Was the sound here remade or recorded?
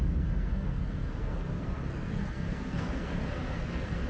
remade